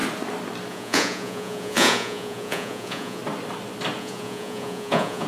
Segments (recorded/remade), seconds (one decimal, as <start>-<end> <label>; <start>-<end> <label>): 0.0-0.7 recorded; 0.7-3.2 remade; 3.2-4.0 recorded; 4.0-5.3 remade